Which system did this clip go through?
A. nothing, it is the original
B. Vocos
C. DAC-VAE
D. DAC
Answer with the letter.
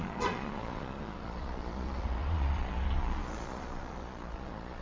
B